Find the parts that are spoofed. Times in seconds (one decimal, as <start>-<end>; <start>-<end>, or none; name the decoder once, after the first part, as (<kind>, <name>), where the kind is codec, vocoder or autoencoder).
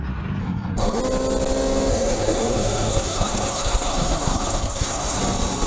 0.4-1.0 (codec, SNAC); 1.9-5.2